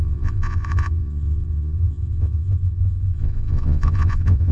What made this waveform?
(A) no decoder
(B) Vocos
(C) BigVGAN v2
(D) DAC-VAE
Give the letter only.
B